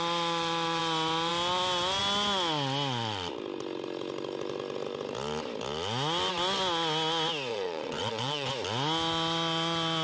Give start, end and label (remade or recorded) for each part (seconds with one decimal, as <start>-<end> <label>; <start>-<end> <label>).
0.0-7.5 recorded; 7.5-8.5 remade; 8.5-10.0 recorded